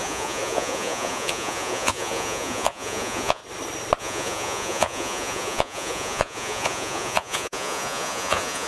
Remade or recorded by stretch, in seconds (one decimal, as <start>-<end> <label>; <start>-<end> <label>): 0.0-3.4 remade; 3.4-4.0 recorded; 4.0-8.7 remade